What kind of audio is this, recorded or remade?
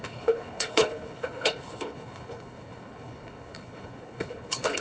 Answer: remade